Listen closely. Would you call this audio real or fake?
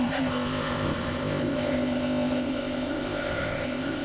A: fake